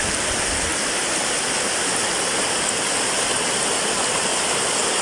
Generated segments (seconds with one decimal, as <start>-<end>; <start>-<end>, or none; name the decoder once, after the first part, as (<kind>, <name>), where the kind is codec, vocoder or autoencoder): none